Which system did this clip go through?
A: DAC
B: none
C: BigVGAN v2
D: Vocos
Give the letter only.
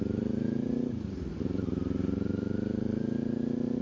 B